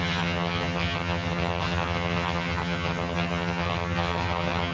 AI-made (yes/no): yes